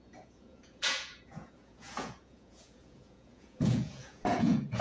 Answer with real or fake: fake